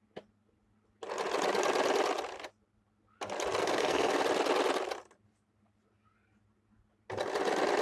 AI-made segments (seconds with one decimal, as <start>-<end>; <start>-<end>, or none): 3.6-4.2